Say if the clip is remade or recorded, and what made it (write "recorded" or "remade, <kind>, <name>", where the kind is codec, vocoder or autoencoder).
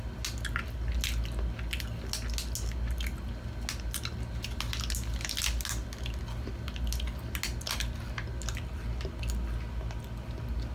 recorded